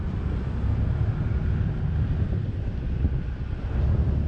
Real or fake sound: real